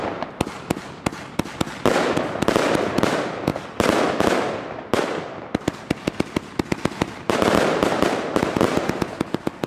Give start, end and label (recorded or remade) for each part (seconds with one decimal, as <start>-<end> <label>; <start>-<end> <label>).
0.0-9.7 recorded